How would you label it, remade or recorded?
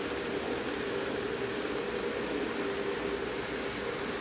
recorded